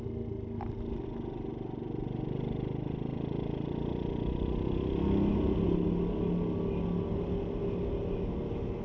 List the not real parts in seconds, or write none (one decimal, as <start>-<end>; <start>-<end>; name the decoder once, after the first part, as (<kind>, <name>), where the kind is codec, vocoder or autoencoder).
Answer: none